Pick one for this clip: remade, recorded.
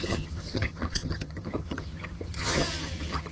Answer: remade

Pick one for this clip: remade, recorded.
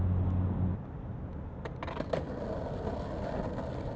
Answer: recorded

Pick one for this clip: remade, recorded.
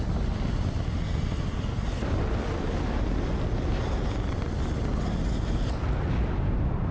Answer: recorded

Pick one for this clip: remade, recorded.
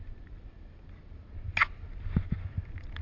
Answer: recorded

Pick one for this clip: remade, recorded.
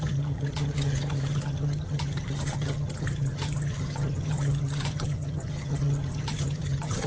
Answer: remade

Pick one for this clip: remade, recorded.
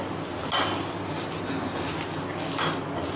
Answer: recorded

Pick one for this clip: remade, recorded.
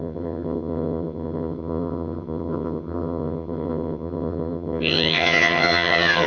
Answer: remade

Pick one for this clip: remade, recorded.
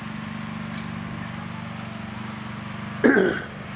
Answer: recorded